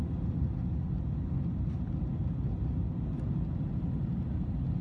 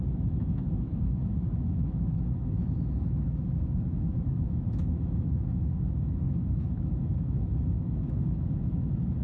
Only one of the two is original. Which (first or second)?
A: first